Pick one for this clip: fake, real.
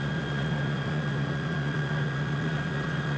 fake